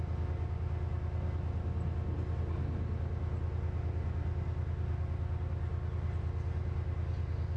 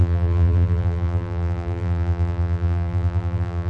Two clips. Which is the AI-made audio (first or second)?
second